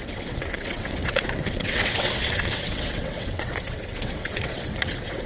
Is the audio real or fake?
fake